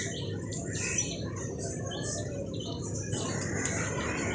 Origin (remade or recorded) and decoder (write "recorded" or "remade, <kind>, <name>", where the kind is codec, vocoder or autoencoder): recorded